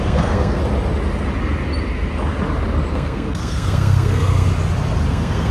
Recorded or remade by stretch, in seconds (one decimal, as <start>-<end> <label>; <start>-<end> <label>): 0.0-0.6 remade; 0.6-2.9 recorded; 2.9-4.5 remade; 4.5-5.1 recorded; 5.1-5.5 remade